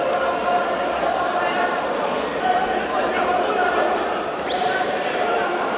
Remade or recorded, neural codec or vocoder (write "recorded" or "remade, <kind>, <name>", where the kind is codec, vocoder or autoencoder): remade, vocoder, BigVGAN v2